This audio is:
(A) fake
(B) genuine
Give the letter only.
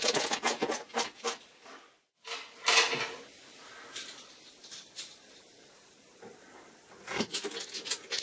B